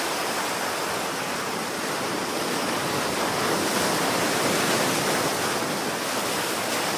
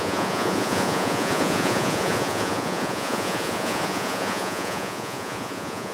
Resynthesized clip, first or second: second